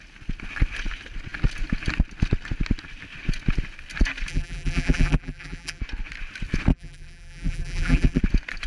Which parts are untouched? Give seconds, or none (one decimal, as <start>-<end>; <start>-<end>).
0.0-4.3; 5.8-6.7; 8.2-8.7